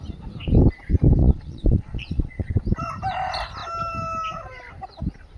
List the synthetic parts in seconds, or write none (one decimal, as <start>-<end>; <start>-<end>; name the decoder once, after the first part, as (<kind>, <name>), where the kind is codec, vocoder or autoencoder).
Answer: 1.2-2.6 (vocoder, Vocos)